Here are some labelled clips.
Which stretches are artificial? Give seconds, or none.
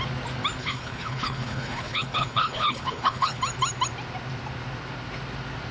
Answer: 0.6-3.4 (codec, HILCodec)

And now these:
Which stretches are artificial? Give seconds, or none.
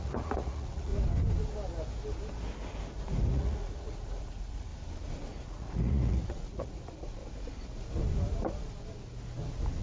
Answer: 0.0-0.9 (vocoder, Vocos); 3.3-4.7; 5.3-7.2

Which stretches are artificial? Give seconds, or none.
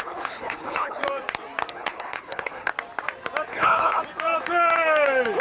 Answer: 0.0-1.0 (codec, HILCodec); 1.7-2.7; 3.5-4.0